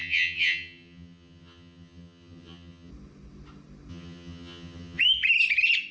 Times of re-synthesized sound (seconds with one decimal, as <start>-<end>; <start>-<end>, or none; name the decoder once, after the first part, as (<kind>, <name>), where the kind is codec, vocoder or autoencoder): 0.0-2.9 (vocoder, HiFi-GAN); 3.9-5.0